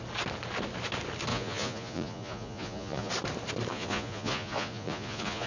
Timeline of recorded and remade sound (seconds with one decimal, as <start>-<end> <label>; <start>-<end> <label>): 0.0-1.3 recorded; 1.3-3.1 remade; 3.1-3.7 recorded; 3.7-5.5 remade